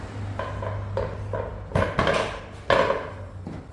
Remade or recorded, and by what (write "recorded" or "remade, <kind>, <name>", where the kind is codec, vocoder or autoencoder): recorded